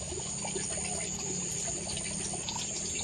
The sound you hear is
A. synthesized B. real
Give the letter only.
B